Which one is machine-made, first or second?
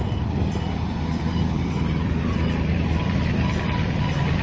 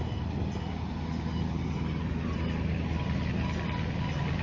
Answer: first